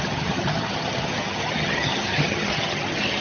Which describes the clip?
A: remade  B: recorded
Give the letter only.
A